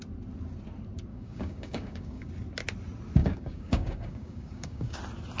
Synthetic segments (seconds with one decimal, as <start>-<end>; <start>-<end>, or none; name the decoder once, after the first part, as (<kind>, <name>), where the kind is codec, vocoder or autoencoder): 1.1-2.3 (codec, DAC); 3.2-5.0